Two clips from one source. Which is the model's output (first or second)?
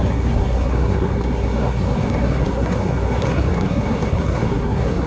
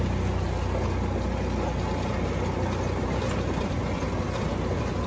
first